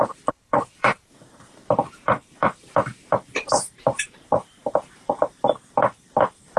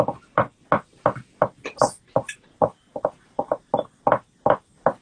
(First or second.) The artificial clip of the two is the first